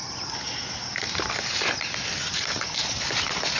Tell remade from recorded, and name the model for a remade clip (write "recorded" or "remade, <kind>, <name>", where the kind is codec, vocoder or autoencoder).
recorded